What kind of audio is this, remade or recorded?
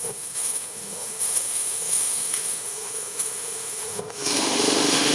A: remade